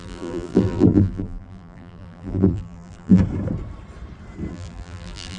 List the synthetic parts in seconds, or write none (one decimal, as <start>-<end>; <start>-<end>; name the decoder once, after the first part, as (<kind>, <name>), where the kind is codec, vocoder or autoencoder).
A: 0.0-3.2 (vocoder, BigVGAN v2); 4.5-5.4